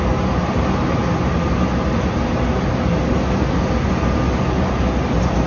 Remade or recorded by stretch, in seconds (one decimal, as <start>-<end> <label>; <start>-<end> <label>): 0.0-5.5 recorded